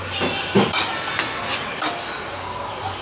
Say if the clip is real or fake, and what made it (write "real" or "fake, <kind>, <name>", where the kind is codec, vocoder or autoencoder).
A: real